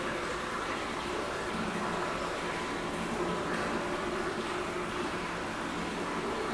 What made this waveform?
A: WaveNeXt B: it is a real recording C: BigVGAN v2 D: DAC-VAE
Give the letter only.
B